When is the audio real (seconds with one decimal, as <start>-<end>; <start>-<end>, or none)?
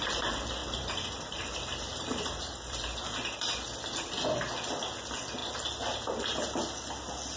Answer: 0.0-0.6; 3.5-7.4